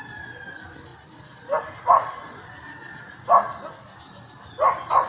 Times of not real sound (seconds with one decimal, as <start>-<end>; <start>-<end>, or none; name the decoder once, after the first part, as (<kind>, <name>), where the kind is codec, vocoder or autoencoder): 0.9-3.7 (vocoder, BigVGAN v2)